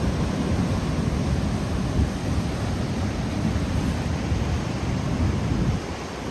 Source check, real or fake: real